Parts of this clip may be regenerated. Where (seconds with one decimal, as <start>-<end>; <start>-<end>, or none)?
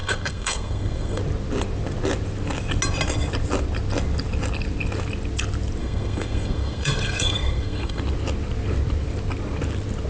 0.0-1.2; 5.8-8.0